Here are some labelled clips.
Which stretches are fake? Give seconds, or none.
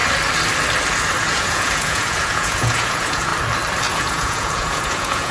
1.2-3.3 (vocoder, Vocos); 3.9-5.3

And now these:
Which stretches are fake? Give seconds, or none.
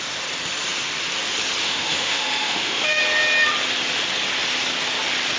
1.6-3.0 (autoencoder, DAC-VAE)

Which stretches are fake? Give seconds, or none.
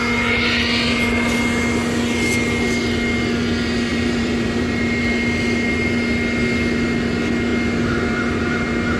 3.9-5.3 (vocoder, BigVGAN v2)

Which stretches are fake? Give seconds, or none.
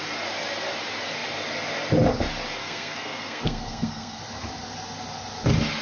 2.6-4.2 (codec, SNAC)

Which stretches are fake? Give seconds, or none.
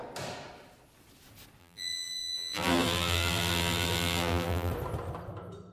1.6-4.7 (vocoder, BigVGAN v2)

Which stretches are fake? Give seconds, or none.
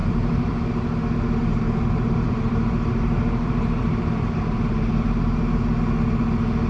0.0-0.6 (vocoder, BigVGAN v2); 1.4-5.4